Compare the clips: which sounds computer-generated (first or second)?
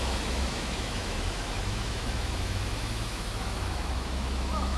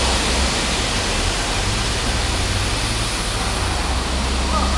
first